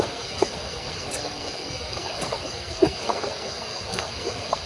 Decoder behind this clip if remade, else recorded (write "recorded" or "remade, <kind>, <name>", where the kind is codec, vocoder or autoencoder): remade, codec, SNAC